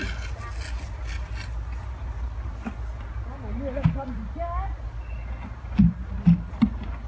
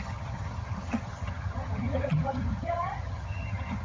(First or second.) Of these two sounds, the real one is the first